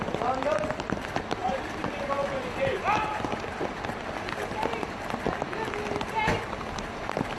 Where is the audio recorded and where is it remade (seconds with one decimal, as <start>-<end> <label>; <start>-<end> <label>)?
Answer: 0.0-1.4 recorded; 1.4-2.1 remade; 2.1-7.4 recorded